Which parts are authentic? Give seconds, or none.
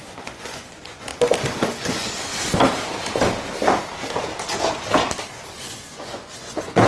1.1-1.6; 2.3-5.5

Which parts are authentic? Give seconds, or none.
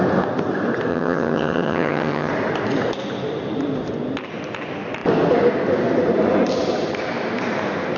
0.0-0.9; 2.3-8.0